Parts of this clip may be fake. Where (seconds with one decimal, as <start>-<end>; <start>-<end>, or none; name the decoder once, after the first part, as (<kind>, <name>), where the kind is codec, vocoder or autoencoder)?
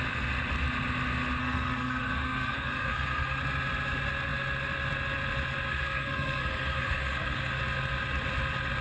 1.4-3.4 (codec, SNAC); 5.7-7.6